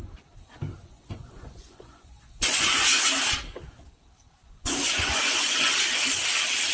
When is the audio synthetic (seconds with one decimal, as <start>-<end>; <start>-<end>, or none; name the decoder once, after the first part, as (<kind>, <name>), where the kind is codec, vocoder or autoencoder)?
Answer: 0.7-3.0 (vocoder, Vocos); 4.4-5.7